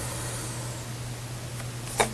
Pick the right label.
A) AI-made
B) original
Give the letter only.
B